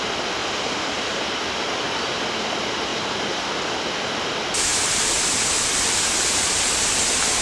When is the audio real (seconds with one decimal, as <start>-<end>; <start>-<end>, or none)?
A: 0.0-0.4; 1.2-4.7; 5.5-7.4